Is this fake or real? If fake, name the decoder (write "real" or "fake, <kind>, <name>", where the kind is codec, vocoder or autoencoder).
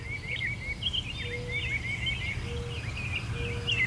real